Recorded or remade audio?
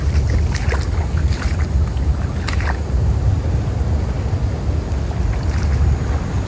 recorded